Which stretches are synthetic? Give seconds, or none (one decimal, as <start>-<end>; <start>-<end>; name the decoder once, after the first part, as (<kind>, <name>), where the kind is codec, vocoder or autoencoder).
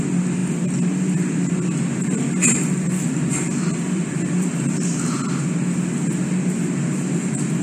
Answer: 3.3-4.9 (vocoder, BigVGAN v2)